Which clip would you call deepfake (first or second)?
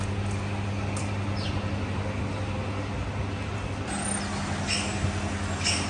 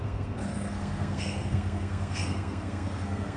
second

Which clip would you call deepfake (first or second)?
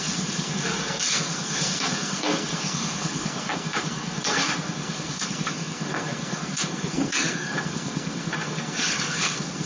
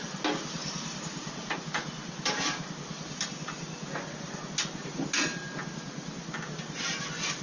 first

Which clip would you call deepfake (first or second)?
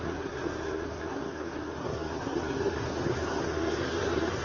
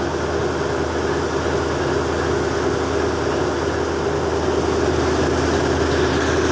first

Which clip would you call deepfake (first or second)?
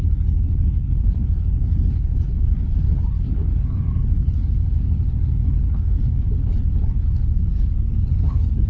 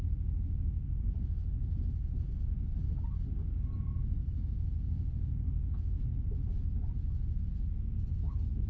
first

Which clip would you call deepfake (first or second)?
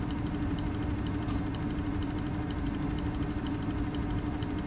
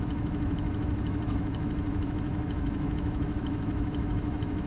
second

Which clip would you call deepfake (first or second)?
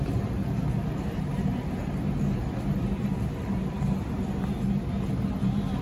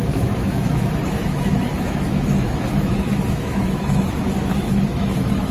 second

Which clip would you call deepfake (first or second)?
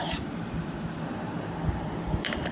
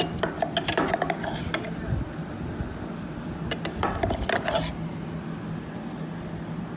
first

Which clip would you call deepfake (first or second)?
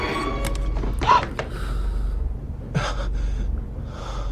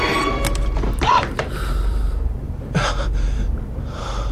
second